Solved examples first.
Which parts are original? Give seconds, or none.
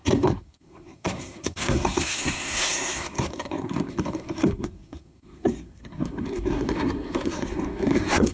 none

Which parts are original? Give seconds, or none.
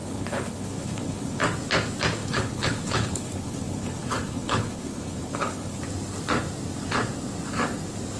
1.4-2.2; 5.8-8.2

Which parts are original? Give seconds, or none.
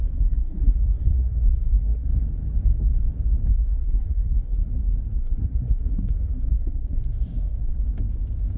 2.1-3.5; 4.6-5.2; 7.7-8.6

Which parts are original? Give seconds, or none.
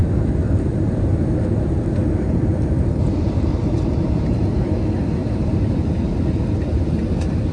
4.5-5.2; 6.4-7.5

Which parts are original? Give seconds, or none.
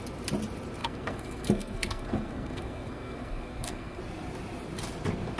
0.0-0.8; 4.0-5.4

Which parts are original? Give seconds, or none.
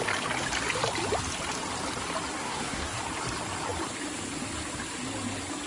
0.0-2.4; 3.0-5.7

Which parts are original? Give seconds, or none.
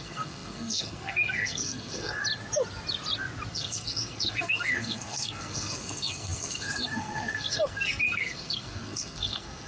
2.2-3.5